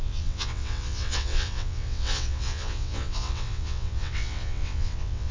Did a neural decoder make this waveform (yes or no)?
yes